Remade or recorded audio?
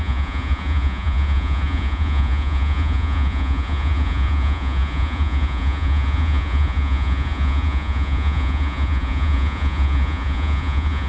remade